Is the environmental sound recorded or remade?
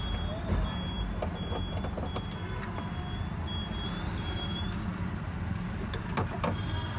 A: recorded